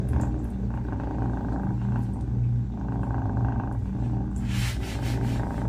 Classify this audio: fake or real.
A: real